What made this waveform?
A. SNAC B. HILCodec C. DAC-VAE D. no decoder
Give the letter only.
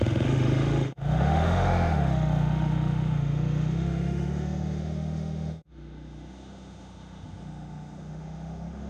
C